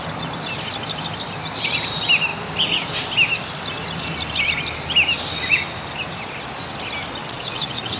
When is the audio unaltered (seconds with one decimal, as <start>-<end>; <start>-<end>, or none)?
0.0-7.2